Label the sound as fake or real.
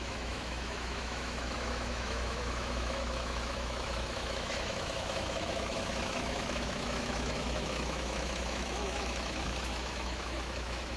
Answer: fake